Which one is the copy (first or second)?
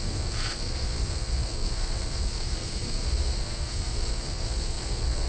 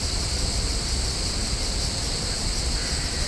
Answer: first